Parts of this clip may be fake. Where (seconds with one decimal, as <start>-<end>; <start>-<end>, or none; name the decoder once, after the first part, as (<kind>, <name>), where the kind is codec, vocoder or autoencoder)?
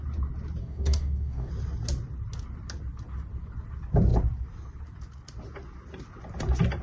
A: 0.6-1.5 (codec, DAC)